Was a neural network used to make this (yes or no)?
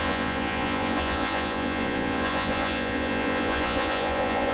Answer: yes